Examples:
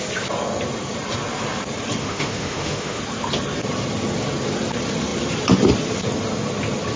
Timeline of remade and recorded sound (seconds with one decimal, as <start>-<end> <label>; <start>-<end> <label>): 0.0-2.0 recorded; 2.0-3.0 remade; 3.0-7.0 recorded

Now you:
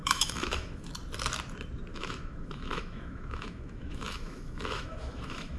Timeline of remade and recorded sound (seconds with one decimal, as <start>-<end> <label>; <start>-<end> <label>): 0.0-0.9 remade; 0.9-1.9 recorded; 1.9-5.6 remade

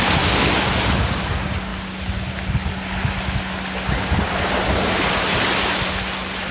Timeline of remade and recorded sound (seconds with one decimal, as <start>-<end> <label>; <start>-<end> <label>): 0.0-6.5 recorded

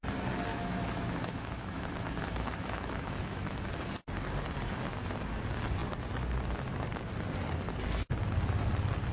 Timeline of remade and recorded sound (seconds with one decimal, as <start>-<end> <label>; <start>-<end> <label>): 0.0-0.5 recorded; 0.5-3.7 remade; 3.7-9.1 recorded

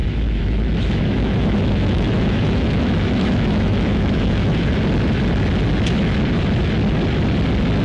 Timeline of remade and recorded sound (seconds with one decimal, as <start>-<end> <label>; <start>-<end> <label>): 0.0-4.7 remade; 4.7-7.8 recorded